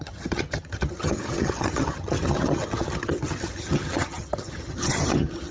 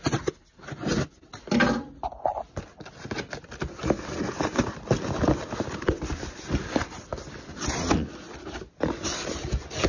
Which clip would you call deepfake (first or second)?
first